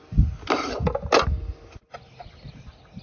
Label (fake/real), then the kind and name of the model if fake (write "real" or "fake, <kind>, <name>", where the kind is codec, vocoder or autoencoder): real